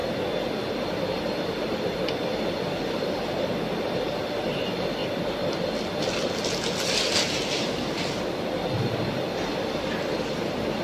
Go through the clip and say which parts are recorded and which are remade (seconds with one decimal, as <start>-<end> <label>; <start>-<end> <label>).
0.0-5.0 remade; 5.0-9.5 recorded; 9.5-10.8 remade